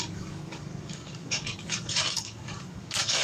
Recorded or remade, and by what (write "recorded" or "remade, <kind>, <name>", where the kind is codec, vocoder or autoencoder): remade, codec, DAC